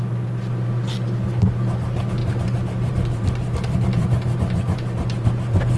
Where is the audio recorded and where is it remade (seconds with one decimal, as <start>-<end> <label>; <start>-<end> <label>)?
0.0-2.2 recorded; 2.2-5.8 remade

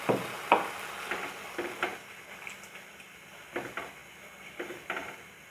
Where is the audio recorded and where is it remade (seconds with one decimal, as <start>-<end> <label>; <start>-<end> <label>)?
0.0-5.5 recorded

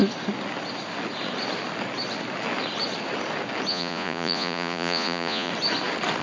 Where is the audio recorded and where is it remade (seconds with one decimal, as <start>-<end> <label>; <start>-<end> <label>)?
0.0-3.7 recorded; 3.7-5.5 remade; 5.5-6.2 recorded

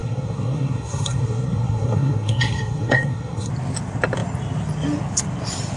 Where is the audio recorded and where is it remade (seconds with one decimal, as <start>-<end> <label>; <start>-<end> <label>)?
0.0-3.5 remade; 3.5-5.8 recorded

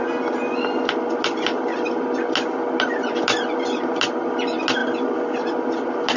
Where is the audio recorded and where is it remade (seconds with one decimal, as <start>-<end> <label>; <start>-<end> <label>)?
0.0-6.2 recorded

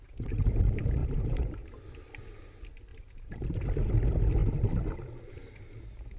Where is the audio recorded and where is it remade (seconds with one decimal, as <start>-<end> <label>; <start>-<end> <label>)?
0.0-1.0 recorded; 1.0-1.5 remade; 1.5-2.9 recorded; 2.9-3.5 remade; 3.5-4.4 recorded; 4.4-5.3 remade; 5.3-6.2 recorded